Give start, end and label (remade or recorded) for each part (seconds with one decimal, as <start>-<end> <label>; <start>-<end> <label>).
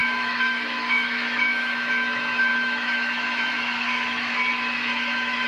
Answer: 0.0-5.5 remade